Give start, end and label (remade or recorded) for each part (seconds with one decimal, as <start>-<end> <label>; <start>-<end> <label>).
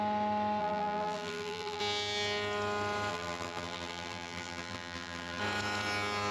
0.0-0.6 recorded; 0.6-1.8 remade; 1.8-3.1 recorded; 3.1-5.4 remade; 5.4-6.3 recorded